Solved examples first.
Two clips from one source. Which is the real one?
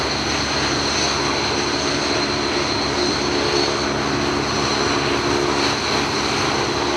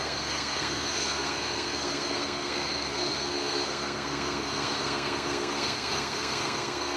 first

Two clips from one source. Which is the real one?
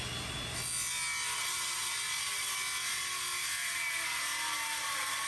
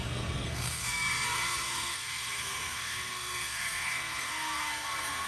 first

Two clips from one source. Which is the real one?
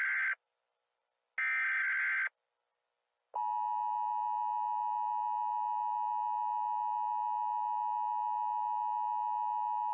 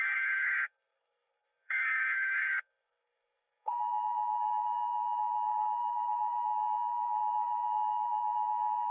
first